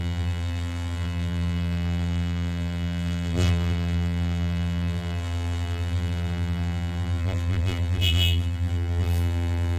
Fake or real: fake